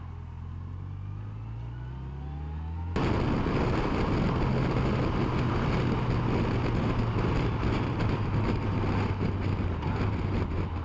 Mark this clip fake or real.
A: real